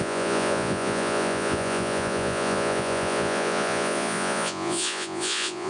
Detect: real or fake fake